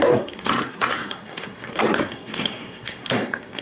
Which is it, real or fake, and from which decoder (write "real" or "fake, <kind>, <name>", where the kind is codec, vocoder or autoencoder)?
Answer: fake, codec, SNAC